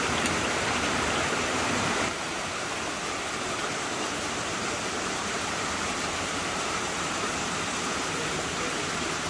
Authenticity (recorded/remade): remade